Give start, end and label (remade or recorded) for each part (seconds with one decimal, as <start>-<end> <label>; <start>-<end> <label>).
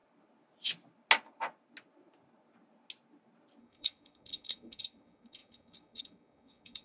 0.0-3.6 recorded; 3.6-6.8 remade